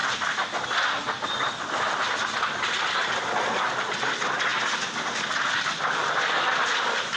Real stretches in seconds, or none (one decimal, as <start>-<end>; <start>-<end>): 0.0-7.2